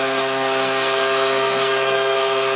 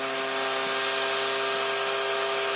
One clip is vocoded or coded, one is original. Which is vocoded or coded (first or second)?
first